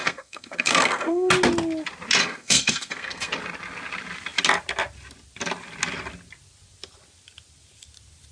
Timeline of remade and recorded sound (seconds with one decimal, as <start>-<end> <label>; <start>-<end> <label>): 0.0-1.3 remade; 1.3-2.2 recorded; 2.2-3.3 remade; 3.3-8.3 recorded